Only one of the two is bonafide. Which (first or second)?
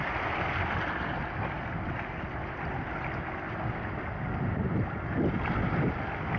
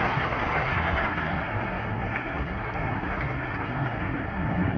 first